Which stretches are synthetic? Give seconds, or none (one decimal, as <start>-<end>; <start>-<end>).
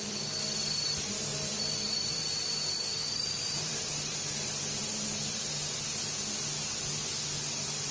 1.3-4.9